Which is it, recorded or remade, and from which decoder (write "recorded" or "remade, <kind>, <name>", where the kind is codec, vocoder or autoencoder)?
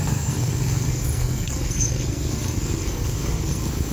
remade, codec, SNAC